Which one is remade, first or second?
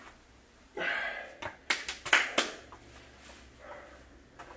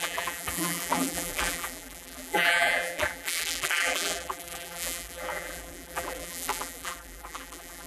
second